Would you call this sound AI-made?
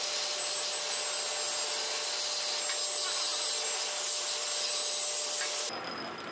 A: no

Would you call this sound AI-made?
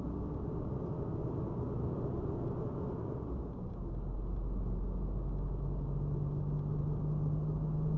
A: no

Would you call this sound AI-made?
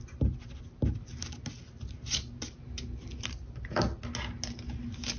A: no